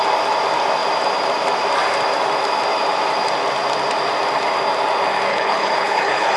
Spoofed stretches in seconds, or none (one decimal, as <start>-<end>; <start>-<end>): 5.3-6.4